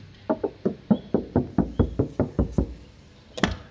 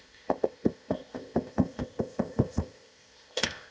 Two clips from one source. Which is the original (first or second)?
first